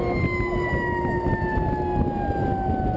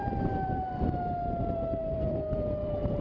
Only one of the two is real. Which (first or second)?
first